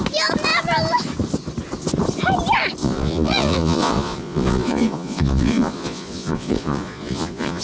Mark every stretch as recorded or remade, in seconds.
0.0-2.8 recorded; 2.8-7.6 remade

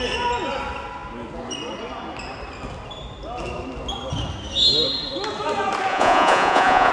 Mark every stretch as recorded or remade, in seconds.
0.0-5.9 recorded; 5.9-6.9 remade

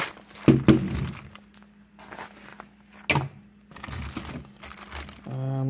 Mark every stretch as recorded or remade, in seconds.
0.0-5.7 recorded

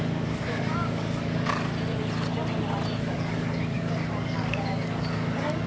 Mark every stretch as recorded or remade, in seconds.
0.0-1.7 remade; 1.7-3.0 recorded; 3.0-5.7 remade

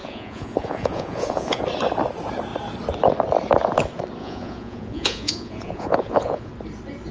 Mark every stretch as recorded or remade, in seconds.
0.0-1.6 remade; 1.6-4.2 recorded; 4.2-6.5 remade; 6.5-7.1 recorded

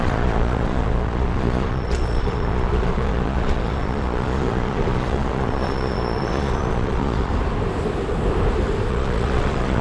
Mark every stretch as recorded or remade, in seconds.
0.0-7.3 remade; 7.3-8.9 recorded; 8.9-9.8 remade